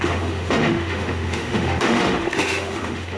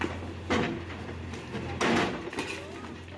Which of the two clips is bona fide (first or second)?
second